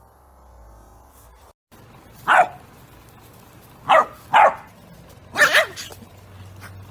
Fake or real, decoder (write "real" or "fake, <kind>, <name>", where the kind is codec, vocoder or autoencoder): real